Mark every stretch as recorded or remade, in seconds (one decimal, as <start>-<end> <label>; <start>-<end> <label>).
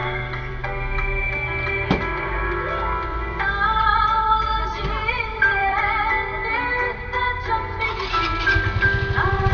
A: 0.0-0.5 remade; 0.5-3.1 recorded; 3.1-5.8 remade; 5.8-6.4 recorded; 6.4-7.2 remade; 7.2-9.5 recorded